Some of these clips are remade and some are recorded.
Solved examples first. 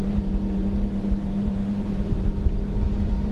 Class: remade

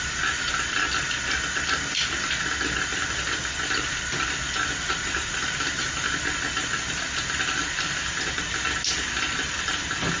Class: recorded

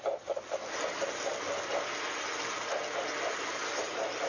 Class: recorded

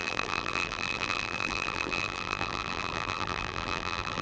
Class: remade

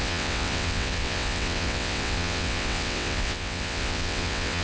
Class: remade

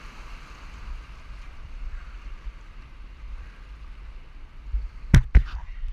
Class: remade